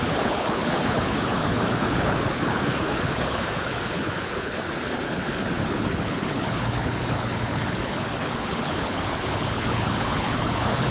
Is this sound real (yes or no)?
no